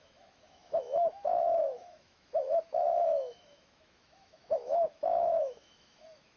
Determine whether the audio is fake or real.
fake